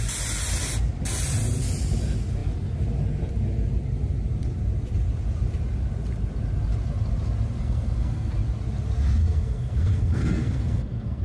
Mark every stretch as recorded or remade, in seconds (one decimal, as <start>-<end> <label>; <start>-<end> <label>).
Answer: 0.0-7.6 recorded; 7.6-8.3 remade; 8.3-9.2 recorded; 9.2-11.2 remade